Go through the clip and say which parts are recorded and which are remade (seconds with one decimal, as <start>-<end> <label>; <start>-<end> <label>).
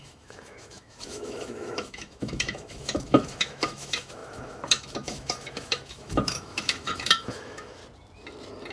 0.0-7.8 remade; 7.8-8.7 recorded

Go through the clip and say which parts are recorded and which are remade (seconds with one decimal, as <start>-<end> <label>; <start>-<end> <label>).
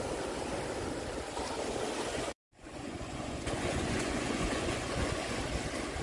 0.0-2.1 recorded; 2.1-5.4 remade; 5.4-6.0 recorded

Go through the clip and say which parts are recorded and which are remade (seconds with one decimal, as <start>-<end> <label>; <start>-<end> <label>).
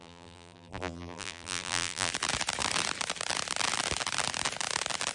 0.0-2.1 remade; 2.1-5.1 recorded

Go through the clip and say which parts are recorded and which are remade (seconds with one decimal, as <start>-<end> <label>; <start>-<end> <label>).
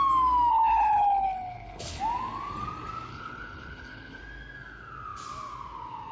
0.0-0.5 recorded; 0.5-2.0 remade; 2.0-3.1 recorded; 3.1-4.2 remade; 4.2-6.1 recorded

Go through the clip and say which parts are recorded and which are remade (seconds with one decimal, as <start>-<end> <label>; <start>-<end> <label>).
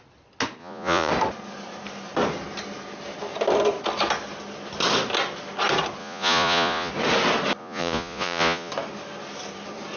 0.0-0.6 recorded; 0.6-1.1 remade; 1.1-6.0 recorded; 6.0-6.9 remade; 6.9-7.6 recorded; 7.6-8.7 remade; 8.7-10.0 recorded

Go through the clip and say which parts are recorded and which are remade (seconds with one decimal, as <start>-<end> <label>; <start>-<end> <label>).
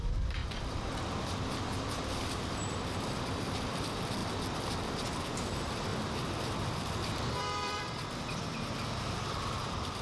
0.0-0.4 remade; 0.4-1.8 recorded; 1.8-5.9 remade; 5.9-6.9 recorded; 6.9-10.0 remade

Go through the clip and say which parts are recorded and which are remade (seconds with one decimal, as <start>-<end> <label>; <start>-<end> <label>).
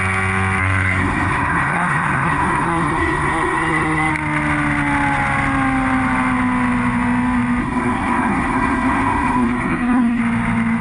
0.0-0.6 recorded; 0.6-4.1 remade; 4.1-7.6 recorded; 7.6-10.2 remade; 10.2-10.8 recorded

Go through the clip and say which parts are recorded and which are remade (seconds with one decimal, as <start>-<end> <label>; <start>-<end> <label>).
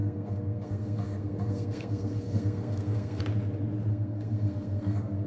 0.0-3.2 remade; 3.2-3.9 recorded; 3.9-5.3 remade